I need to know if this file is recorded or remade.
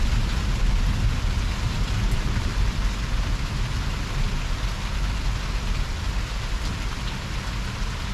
recorded